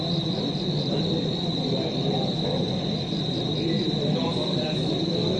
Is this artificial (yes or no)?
no